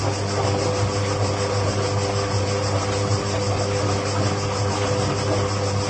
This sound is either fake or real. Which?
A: real